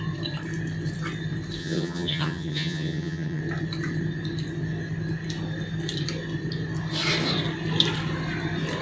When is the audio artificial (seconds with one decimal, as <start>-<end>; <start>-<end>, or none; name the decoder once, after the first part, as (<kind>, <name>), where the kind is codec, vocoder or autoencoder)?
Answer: 1.6-3.4 (vocoder, HiFi-GAN)